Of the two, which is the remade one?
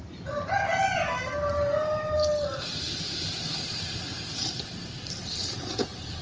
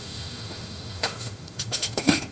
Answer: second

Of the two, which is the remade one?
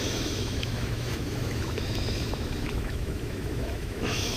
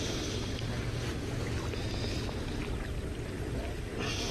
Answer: first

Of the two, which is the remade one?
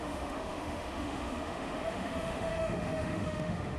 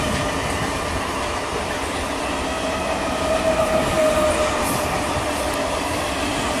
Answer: first